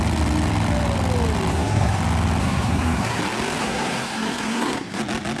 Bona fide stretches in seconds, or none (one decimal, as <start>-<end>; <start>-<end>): 0.0-1.5; 2.0-2.4; 3.2-3.6; 5.0-5.4